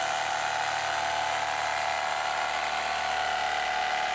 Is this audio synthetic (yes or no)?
no